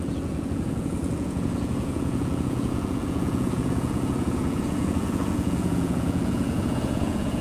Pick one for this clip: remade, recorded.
remade